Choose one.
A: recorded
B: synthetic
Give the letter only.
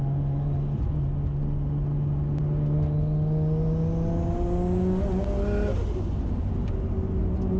A